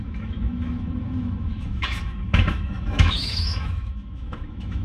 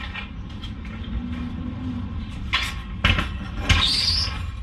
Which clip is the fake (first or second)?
first